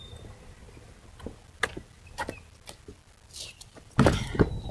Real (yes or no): yes